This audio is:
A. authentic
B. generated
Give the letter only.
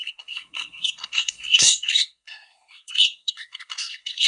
B